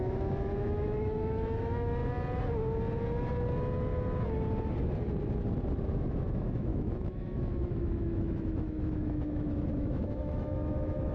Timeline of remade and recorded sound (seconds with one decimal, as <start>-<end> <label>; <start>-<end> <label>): 0.0-2.0 remade; 2.0-6.3 recorded; 6.3-11.1 remade